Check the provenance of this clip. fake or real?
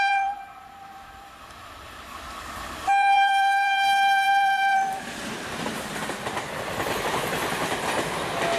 fake